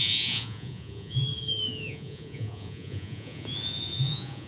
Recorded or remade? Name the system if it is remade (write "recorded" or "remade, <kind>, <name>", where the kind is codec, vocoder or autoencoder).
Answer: remade, vocoder, Vocos